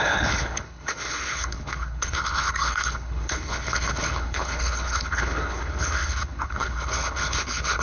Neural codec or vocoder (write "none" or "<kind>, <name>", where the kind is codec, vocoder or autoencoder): codec, HILCodec